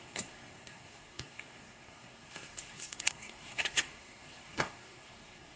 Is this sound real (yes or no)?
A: no